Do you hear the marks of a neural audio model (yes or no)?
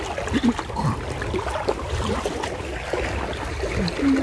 no